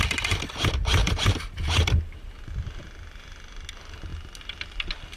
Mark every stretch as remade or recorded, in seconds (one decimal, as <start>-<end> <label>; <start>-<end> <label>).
0.0-1.0 recorded; 1.0-2.5 remade; 2.5-5.2 recorded